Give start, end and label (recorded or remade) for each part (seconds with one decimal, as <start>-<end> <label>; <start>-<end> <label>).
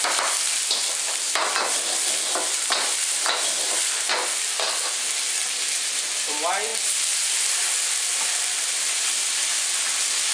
0.0-10.3 recorded